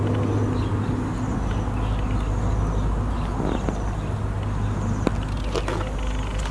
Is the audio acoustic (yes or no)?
yes